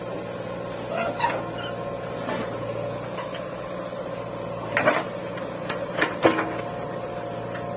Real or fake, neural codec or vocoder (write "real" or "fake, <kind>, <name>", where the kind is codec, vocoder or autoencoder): real